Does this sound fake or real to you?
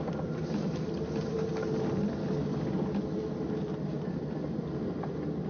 real